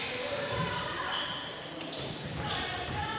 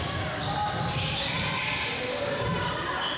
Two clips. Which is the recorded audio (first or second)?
second